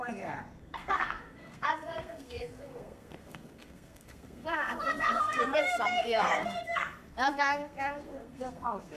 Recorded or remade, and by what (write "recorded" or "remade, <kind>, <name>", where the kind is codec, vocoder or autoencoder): remade, codec, SNAC